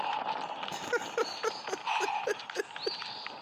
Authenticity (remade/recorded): recorded